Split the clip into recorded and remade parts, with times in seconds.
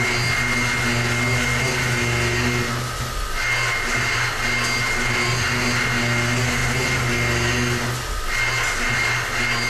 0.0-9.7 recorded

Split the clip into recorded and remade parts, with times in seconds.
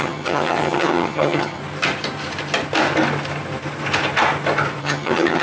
0.0-1.6 remade; 1.6-4.8 recorded; 4.8-5.4 remade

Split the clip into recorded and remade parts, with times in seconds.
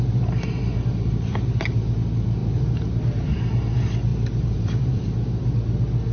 0.0-2.4 recorded; 2.4-3.0 remade; 3.0-4.1 recorded; 4.1-5.1 remade; 5.1-6.1 recorded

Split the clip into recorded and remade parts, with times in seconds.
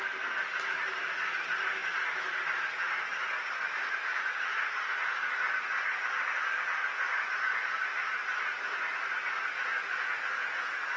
0.0-11.0 recorded